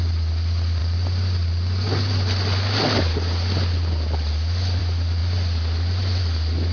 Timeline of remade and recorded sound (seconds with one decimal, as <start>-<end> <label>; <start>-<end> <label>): 0.0-6.7 recorded